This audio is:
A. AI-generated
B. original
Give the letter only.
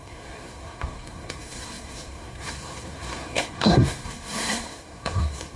A